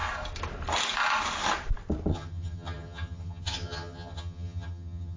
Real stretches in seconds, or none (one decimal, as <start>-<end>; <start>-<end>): 0.0-2.1